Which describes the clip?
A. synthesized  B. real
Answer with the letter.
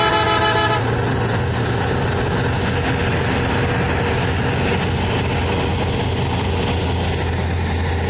B